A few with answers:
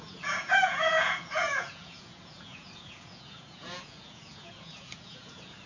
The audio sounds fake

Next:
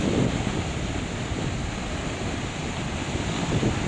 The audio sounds real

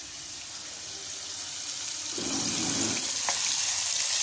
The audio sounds real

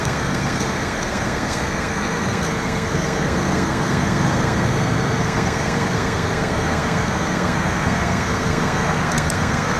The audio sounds fake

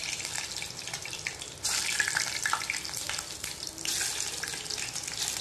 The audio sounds real